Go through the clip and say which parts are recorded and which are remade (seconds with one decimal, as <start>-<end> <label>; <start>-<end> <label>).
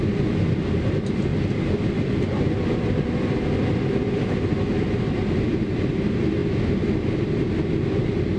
0.0-8.4 recorded